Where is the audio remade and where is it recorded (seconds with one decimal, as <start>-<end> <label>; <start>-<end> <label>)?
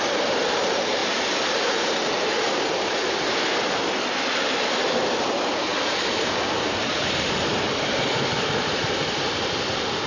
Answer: 0.0-10.1 remade